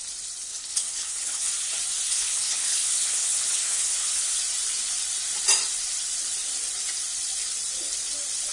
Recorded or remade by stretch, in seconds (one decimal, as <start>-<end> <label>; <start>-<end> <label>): 0.0-0.5 recorded; 0.5-1.5 remade; 1.5-2.1 recorded; 2.1-4.4 remade; 4.4-8.5 recorded